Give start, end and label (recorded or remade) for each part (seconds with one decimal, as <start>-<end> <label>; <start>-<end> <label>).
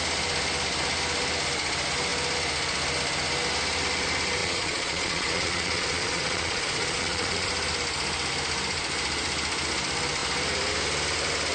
0.0-4.4 recorded; 4.4-7.5 remade; 7.5-11.5 recorded